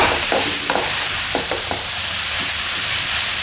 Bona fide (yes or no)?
no